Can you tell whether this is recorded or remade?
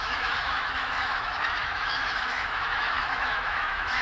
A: remade